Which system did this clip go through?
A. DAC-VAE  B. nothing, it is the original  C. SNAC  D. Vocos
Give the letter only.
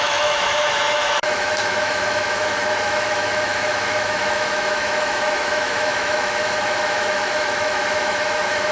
A